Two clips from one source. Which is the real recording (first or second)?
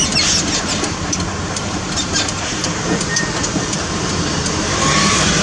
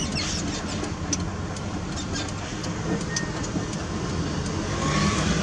second